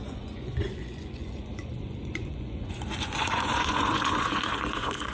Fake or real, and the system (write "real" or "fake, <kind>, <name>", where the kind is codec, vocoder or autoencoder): fake, vocoder, Vocos